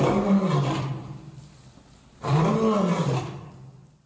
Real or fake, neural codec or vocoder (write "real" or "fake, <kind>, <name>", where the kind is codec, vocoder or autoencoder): real